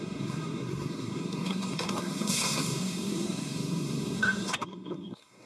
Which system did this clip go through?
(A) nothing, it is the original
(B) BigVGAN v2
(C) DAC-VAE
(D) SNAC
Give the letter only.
D